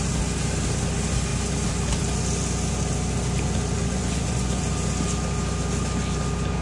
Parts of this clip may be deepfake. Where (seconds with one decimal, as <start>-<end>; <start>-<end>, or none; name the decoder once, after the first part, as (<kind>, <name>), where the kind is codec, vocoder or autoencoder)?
3.8-4.6 (vocoder, Vocos)